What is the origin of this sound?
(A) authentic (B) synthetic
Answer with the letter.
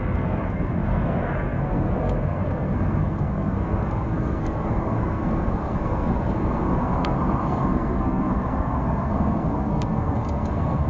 B